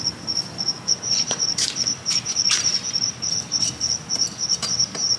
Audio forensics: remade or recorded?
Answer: remade